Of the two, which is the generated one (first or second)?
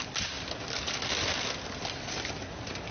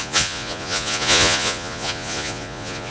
second